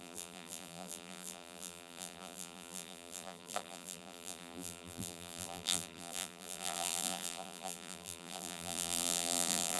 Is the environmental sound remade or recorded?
remade